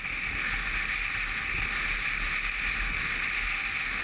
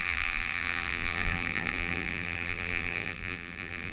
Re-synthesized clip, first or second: second